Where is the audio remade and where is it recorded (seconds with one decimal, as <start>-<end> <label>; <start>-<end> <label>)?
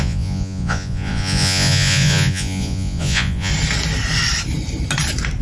0.0-3.5 remade; 3.5-5.4 recorded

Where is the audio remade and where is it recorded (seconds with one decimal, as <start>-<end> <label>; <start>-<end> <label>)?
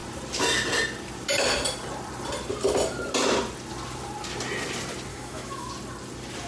0.0-5.1 recorded; 5.1-5.7 remade; 5.7-6.5 recorded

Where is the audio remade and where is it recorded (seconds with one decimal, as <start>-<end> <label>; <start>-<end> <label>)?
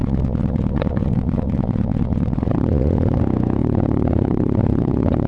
0.0-3.2 remade; 3.2-3.6 recorded; 3.6-5.3 remade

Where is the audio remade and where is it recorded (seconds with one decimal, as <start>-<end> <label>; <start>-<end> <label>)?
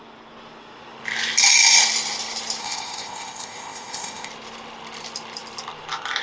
0.0-2.6 recorded; 2.6-4.3 remade; 4.3-6.2 recorded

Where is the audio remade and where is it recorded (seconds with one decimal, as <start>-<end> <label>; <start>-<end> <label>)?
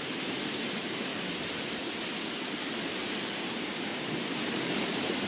0.0-1.1 remade; 1.1-3.2 recorded; 3.2-3.9 remade; 3.9-4.8 recorded; 4.8-5.3 remade